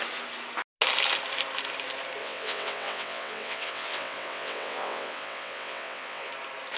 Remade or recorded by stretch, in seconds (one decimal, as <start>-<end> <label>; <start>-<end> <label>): 0.0-2.2 recorded; 2.2-6.3 remade; 6.3-6.8 recorded